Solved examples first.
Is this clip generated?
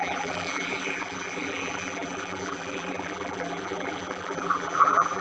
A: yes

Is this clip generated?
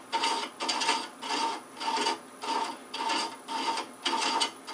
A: no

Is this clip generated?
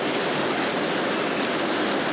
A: no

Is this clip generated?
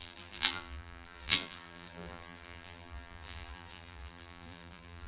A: yes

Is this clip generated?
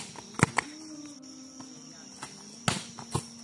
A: no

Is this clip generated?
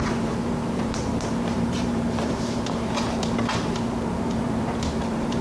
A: yes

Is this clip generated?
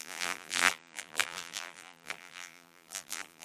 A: yes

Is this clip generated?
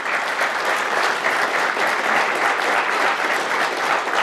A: no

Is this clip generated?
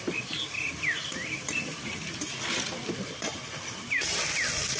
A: yes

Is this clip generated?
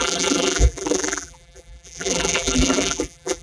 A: yes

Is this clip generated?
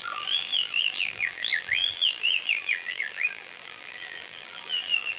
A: yes